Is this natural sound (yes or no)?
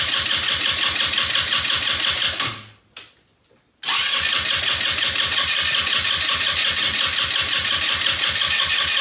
yes